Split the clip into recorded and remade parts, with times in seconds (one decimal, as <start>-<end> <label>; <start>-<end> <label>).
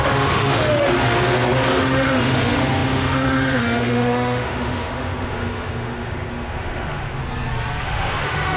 0.0-7.2 remade; 7.2-7.8 recorded; 7.8-8.6 remade